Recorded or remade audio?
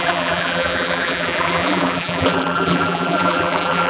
remade